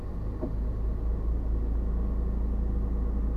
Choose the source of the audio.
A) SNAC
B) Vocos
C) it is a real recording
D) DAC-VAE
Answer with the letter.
C